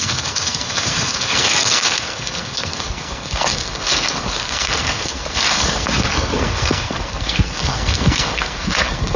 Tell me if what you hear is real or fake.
fake